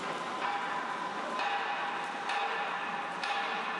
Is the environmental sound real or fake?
real